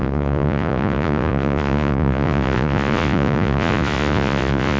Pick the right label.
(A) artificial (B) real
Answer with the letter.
A